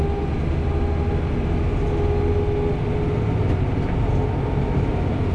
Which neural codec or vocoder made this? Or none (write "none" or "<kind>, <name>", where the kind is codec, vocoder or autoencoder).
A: none